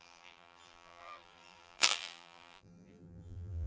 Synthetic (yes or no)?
yes